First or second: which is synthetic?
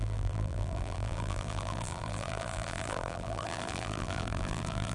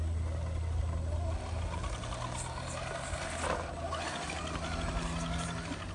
first